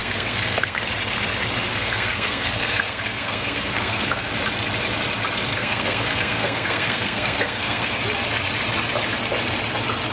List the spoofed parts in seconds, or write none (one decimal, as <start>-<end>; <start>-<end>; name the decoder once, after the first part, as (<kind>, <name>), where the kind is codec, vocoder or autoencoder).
0.0-0.8 (codec, SNAC); 1.7-4.3; 5.5-8.0